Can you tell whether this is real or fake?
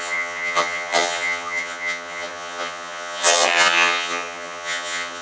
fake